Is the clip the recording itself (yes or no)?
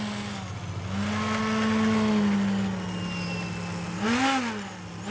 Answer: yes